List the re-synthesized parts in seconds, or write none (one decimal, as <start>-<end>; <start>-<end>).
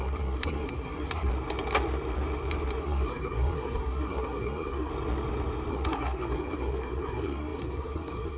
0.0-1.3; 2.8-4.9; 5.7-8.4